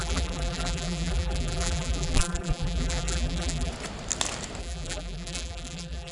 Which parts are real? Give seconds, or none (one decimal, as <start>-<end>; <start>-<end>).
3.7-4.6